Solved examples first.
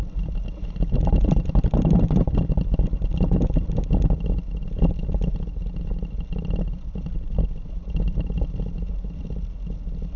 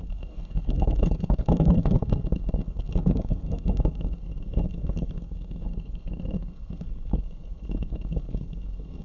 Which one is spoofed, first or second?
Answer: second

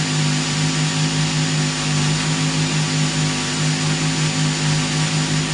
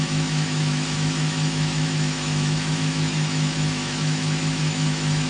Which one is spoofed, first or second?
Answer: second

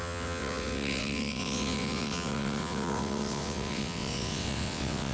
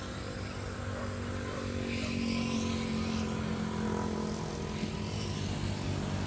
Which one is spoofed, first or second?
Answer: first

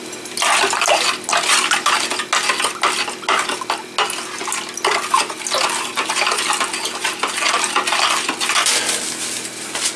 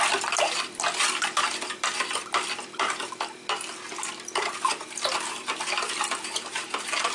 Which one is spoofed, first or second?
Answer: second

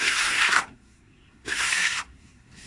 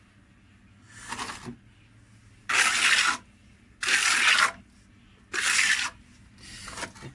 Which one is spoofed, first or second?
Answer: first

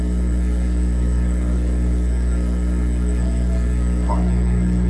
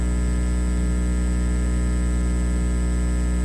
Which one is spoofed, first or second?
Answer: first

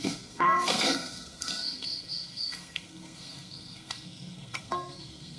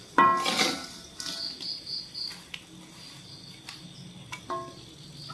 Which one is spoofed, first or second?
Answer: first